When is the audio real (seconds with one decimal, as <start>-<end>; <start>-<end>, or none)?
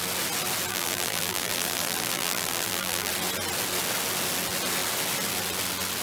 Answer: 0.0-0.7; 3.1-6.0